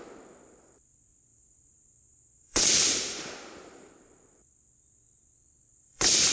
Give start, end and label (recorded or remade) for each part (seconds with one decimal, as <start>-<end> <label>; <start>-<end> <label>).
0.0-1.3 recorded; 1.3-3.9 remade; 3.9-5.7 recorded; 5.7-6.3 remade